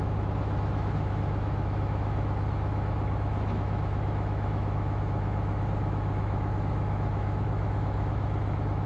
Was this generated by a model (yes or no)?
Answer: yes